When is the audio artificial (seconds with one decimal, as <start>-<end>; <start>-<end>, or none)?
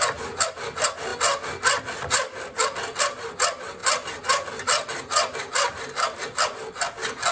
none